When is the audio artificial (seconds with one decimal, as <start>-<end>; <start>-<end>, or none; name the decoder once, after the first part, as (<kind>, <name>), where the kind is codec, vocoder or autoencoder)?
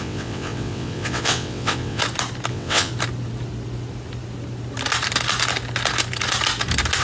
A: 0.0-2.0 (vocoder, WaveNeXt); 2.5-2.9